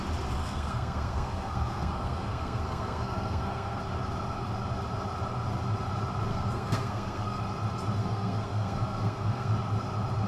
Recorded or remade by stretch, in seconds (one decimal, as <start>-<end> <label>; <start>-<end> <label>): 0.0-0.4 recorded; 0.4-3.8 remade; 3.8-6.3 recorded; 6.3-7.4 remade; 7.4-8.0 recorded; 8.0-9.5 remade; 9.5-10.3 recorded